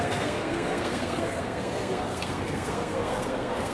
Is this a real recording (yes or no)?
no